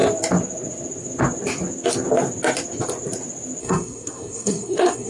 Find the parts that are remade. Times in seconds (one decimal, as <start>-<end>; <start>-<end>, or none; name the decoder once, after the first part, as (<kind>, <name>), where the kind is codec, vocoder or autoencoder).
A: 3.6-5.1 (codec, SNAC)